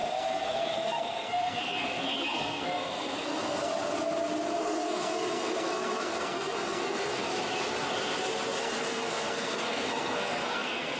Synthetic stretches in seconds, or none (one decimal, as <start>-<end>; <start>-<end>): 0.0-3.7; 4.6-7.3; 8.6-11.0